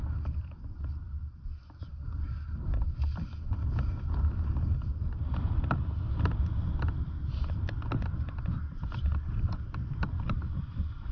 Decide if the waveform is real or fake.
fake